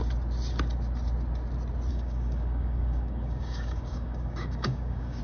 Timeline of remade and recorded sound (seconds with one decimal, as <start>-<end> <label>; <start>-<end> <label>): 0.0-1.9 recorded; 1.9-5.2 remade